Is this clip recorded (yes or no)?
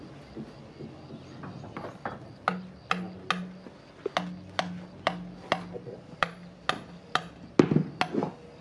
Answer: yes